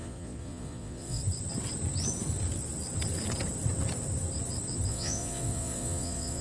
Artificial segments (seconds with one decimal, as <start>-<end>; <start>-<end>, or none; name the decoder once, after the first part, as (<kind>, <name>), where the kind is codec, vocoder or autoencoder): 0.0-1.2 (vocoder, Vocos); 4.9-6.4